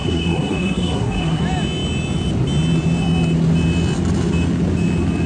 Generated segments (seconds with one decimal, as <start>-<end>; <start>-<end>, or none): 0.0-1.4